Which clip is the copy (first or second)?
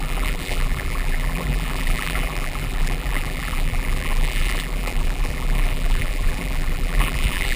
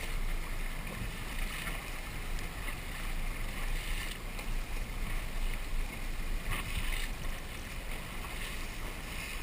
first